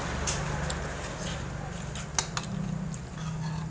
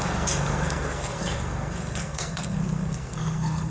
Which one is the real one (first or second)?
first